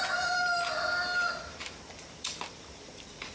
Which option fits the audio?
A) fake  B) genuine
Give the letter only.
B